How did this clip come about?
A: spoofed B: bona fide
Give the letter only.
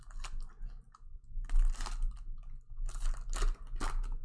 B